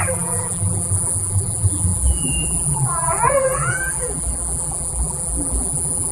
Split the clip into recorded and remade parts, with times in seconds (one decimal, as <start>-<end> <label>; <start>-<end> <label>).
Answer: 0.0-6.1 remade